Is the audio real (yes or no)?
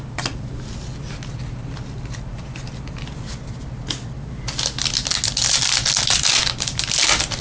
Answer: yes